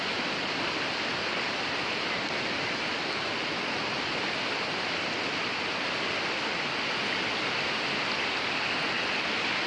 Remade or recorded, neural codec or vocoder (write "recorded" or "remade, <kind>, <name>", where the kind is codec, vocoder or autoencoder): recorded